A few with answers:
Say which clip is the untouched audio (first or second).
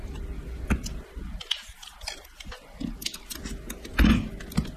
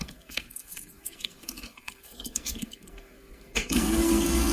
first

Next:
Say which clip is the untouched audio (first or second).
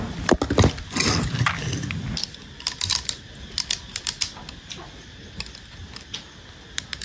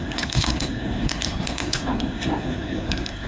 first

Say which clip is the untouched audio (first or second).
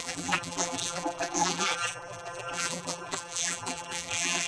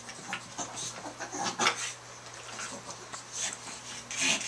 second